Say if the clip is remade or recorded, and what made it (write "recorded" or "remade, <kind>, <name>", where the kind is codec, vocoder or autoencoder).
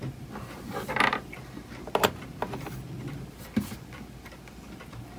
recorded